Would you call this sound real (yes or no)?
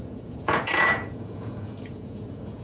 no